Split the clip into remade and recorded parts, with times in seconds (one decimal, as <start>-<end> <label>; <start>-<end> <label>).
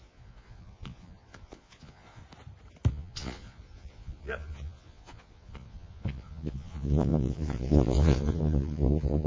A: 0.0-2.2 remade; 2.2-2.9 recorded; 2.9-9.3 remade